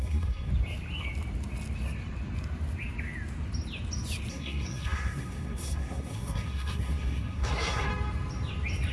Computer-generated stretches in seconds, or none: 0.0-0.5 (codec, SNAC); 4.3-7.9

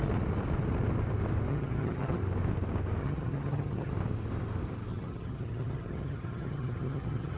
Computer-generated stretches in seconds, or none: 1.5-2.2 (vocoder, HiFi-GAN); 3.0-3.9; 4.9-7.4

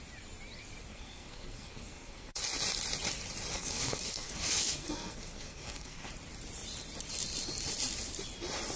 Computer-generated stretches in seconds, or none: 0.9-2.4 (codec, SNAC); 3.5-6.1

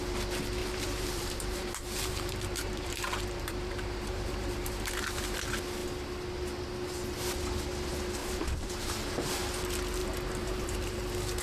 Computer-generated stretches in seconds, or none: 0.6-5.0 (vocoder, BigVGAN v2); 8.2-9.3; 10.0-11.0

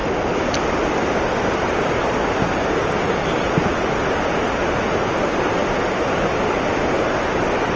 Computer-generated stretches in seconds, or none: none